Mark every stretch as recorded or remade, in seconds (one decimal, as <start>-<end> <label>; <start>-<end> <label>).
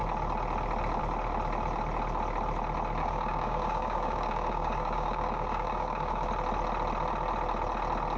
0.0-3.0 recorded; 3.0-6.3 remade; 6.3-8.2 recorded